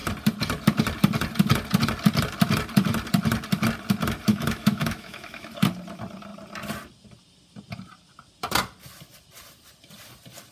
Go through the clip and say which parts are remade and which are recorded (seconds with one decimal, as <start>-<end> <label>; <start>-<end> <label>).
0.0-4.3 recorded; 4.3-5.5 remade; 5.5-10.5 recorded

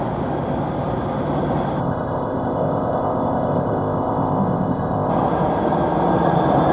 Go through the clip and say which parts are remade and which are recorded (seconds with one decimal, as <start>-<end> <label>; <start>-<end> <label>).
0.0-1.8 recorded; 1.8-5.1 remade; 5.1-6.7 recorded

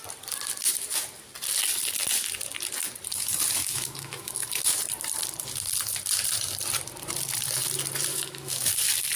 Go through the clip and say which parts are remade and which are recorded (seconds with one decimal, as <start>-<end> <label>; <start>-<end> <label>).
0.0-3.6 recorded; 3.6-4.8 remade; 4.8-8.1 recorded; 8.1-8.7 remade; 8.7-9.2 recorded

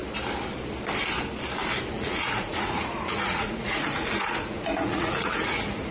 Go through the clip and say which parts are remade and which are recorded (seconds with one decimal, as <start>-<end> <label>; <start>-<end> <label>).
0.0-1.9 recorded; 1.9-5.9 remade

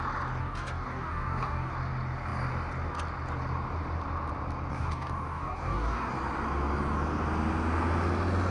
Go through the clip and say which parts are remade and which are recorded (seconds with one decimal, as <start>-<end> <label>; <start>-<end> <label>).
0.0-0.4 recorded; 0.4-1.7 remade; 1.7-4.7 recorded; 4.7-6.1 remade; 6.1-8.5 recorded

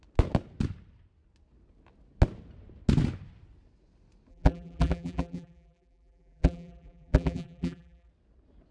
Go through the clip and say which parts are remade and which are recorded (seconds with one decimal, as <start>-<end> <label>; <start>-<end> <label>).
0.0-4.3 recorded; 4.3-8.1 remade; 8.1-8.7 recorded

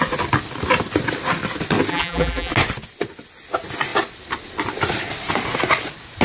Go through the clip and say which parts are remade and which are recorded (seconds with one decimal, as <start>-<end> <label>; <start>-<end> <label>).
0.0-1.9 recorded; 1.9-2.5 remade; 2.5-6.2 recorded

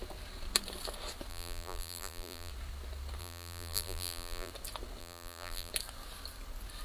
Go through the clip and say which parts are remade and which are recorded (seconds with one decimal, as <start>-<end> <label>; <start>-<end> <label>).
0.0-1.3 recorded; 1.3-2.5 remade; 2.5-3.2 recorded; 3.2-4.5 remade; 4.5-5.0 recorded; 5.0-5.7 remade; 5.7-6.8 recorded